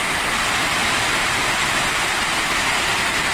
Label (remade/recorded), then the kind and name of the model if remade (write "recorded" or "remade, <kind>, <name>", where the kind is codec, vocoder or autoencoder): recorded